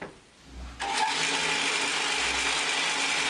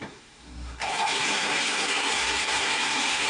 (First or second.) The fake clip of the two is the second